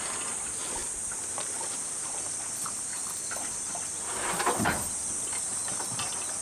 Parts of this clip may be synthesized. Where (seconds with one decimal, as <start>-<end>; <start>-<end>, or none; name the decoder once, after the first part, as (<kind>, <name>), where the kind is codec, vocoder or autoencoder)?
0.8-1.9 (vocoder, BigVGAN v2); 3.0-4.7; 5.6-6.4